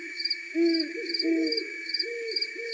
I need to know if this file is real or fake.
fake